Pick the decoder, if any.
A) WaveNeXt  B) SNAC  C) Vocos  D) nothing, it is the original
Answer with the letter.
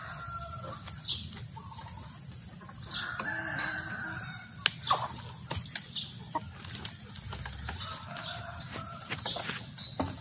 D